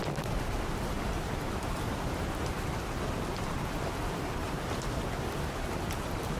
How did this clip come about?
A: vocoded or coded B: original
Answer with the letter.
A